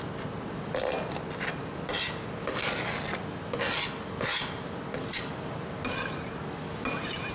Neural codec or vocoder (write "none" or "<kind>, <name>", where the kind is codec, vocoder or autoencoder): none